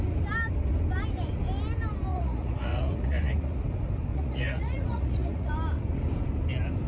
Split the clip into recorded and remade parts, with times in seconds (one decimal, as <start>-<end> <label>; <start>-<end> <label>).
0.0-2.1 recorded; 2.1-3.6 remade; 3.6-4.1 recorded; 4.1-5.5 remade; 5.5-6.9 recorded